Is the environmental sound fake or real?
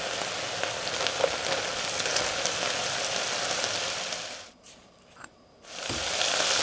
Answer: real